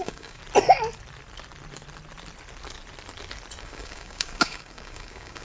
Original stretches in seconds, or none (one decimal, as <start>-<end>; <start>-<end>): 0.4-3.6